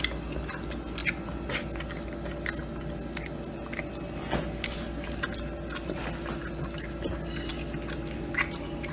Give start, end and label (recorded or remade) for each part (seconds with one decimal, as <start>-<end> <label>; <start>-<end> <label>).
0.0-8.9 recorded